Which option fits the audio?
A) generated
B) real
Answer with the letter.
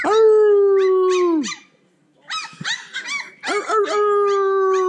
B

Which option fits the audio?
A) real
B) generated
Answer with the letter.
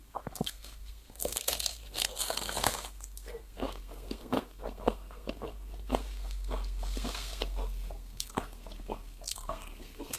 B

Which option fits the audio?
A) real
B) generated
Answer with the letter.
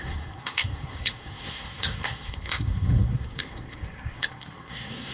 B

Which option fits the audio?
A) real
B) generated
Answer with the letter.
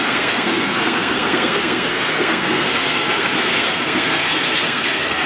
B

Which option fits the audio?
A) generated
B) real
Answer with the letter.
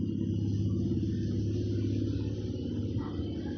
B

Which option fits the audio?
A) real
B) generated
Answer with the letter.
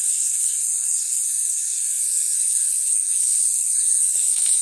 B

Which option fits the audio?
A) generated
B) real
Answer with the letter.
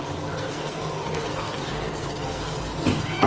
A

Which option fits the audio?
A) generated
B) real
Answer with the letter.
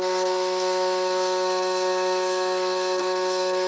A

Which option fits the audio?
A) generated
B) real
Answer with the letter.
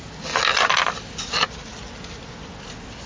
B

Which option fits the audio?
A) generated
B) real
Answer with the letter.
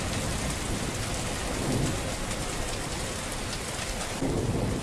B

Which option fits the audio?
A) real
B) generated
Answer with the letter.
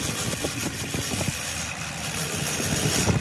A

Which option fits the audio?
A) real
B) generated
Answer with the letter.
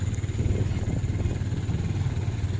A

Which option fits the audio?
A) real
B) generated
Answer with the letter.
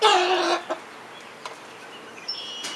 A